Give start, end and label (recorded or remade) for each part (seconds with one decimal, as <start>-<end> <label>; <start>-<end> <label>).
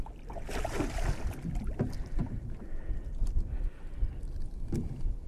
0.0-5.3 recorded